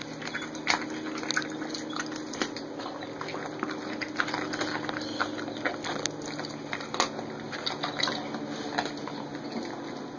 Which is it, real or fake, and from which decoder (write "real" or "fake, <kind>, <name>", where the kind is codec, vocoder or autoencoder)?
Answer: real